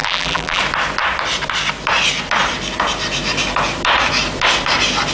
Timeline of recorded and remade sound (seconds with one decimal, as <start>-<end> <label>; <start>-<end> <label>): 0.0-0.6 remade; 0.6-5.1 recorded